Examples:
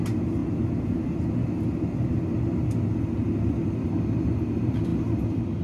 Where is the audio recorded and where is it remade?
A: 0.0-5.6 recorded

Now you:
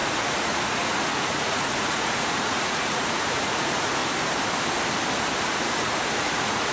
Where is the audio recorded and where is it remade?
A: 0.0-4.0 remade; 4.0-5.4 recorded; 5.4-6.7 remade

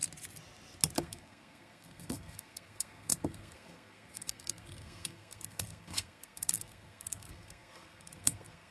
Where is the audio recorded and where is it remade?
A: 0.0-1.0 recorded; 1.0-8.7 remade

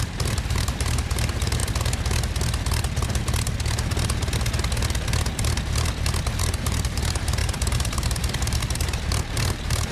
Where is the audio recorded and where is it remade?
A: 0.0-1.6 remade; 1.6-6.4 recorded; 6.4-9.9 remade

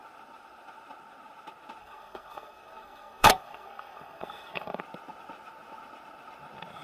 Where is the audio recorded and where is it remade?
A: 0.0-1.8 recorded; 1.8-4.8 remade; 4.8-6.8 recorded

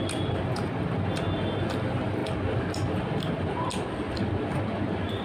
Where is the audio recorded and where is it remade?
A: 0.0-5.2 recorded

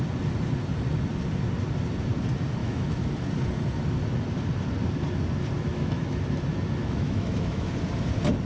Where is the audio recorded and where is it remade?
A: 0.0-2.6 recorded; 2.6-3.1 remade; 3.1-5.7 recorded; 5.7-6.2 remade; 6.2-6.8 recorded; 6.8-7.7 remade; 7.7-8.5 recorded